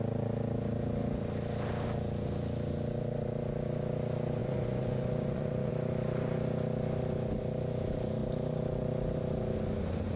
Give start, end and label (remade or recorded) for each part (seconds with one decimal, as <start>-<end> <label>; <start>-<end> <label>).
0.0-4.4 recorded; 4.4-5.7 remade; 5.7-10.2 recorded